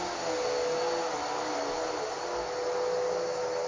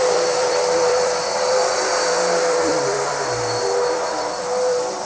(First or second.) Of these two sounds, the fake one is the second